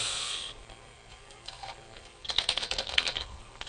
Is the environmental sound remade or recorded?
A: remade